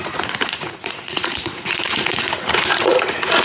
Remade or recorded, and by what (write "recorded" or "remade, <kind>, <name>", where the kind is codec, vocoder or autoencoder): remade, vocoder, Vocos